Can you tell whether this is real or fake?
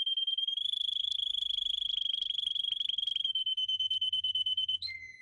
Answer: real